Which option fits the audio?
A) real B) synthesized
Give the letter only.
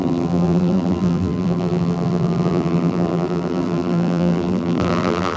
B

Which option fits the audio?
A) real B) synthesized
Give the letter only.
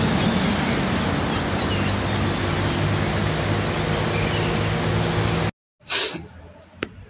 A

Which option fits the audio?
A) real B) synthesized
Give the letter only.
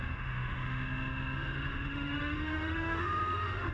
B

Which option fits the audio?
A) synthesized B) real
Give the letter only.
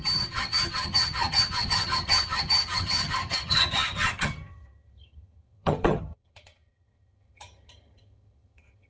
A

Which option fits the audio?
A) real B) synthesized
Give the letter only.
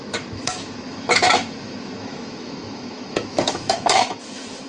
B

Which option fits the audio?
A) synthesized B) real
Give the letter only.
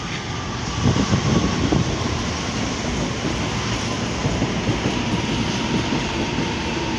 B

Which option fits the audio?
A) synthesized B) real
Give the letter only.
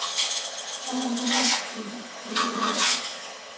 A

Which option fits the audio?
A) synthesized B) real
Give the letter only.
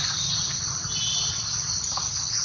B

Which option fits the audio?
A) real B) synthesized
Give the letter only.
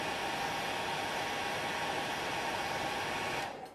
A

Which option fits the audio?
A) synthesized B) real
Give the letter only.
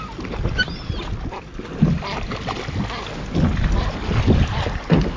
B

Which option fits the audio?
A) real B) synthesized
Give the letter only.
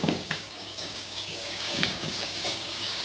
B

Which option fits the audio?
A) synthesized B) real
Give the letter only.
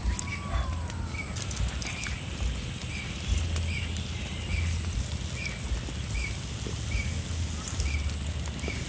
B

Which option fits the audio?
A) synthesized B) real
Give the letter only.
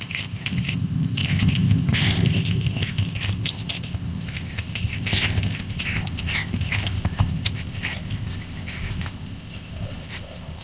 A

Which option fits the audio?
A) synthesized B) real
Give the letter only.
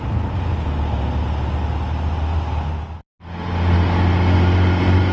B